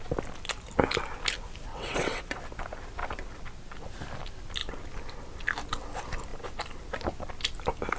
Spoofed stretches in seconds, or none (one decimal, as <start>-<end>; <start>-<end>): 1.7-2.4